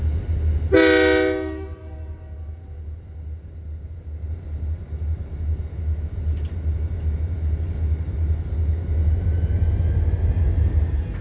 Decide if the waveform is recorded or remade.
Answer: recorded